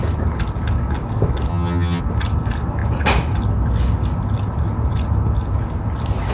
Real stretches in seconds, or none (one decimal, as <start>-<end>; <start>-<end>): 0.0-1.5; 2.0-6.3